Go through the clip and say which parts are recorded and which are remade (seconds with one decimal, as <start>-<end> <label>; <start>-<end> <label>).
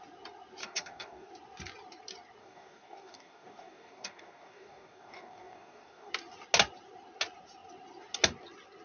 0.0-0.6 recorded; 0.6-1.3 remade; 1.3-2.4 recorded; 2.4-6.1 remade; 6.1-8.8 recorded